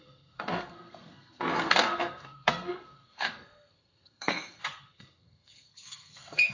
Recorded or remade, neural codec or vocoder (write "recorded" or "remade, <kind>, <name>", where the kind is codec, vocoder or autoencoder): remade, codec, SNAC